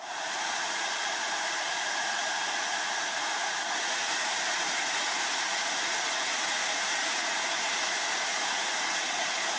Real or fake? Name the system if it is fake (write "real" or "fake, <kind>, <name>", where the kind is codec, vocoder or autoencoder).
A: fake, vocoder, Vocos